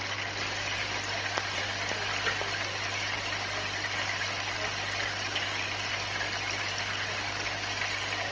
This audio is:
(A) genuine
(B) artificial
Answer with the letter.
A